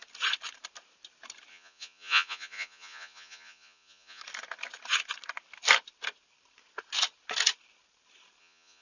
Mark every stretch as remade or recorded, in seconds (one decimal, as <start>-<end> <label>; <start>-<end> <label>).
0.0-1.5 recorded; 1.5-4.2 remade; 4.2-8.4 recorded; 8.4-8.8 remade